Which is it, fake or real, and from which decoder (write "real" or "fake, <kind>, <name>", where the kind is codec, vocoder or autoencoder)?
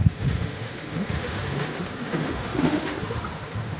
fake, autoencoder, DAC-VAE